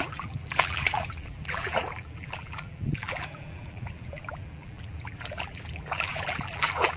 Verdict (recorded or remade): remade